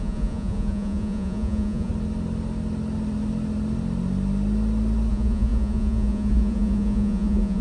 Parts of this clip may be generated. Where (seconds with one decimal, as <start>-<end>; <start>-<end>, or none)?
0.0-1.9; 5.1-7.6

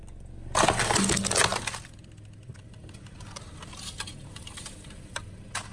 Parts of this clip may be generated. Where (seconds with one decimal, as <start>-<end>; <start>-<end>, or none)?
none

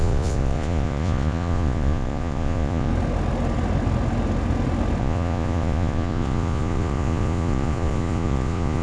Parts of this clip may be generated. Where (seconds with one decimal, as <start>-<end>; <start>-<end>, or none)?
0.0-2.9; 5.0-8.8

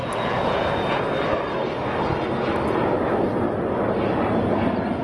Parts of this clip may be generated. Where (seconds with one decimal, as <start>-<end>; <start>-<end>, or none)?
0.0-1.0

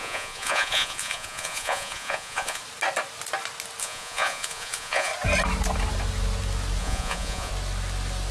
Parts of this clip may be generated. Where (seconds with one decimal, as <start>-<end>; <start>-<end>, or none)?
0.0-2.6; 3.8-5.1; 6.8-7.5

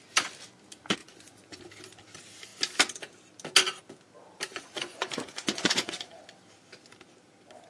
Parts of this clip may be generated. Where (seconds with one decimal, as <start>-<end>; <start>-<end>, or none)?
1.0-1.6; 4.5-6.2

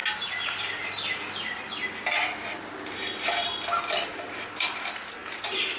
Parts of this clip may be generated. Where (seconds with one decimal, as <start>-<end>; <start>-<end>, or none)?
none

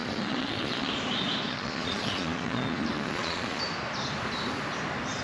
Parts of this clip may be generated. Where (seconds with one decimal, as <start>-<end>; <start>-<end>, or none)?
0.0-0.9; 1.5-3.6